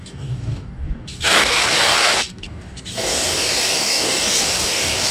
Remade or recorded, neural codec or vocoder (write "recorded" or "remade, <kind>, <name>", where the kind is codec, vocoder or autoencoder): remade, codec, DAC